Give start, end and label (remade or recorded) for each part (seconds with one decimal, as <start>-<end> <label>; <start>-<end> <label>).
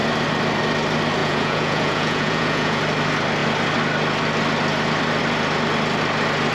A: 0.0-1.2 recorded; 1.2-2.8 remade; 2.8-6.5 recorded